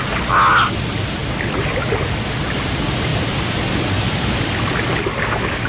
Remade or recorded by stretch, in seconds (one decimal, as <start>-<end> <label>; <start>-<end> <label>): 0.0-3.1 recorded; 3.1-4.6 remade; 4.6-5.7 recorded